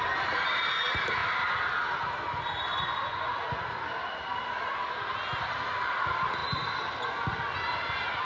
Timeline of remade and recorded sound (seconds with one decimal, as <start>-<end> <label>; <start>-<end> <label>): 0.0-8.2 recorded